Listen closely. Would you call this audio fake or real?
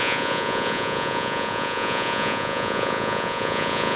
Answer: fake